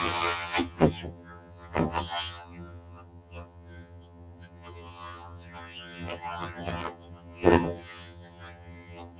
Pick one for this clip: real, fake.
fake